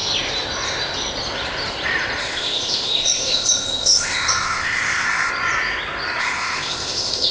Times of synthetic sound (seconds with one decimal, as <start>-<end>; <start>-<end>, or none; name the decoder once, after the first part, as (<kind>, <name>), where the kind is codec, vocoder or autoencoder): 2.2-5.3 (codec, ZipCodec); 6.2-7.3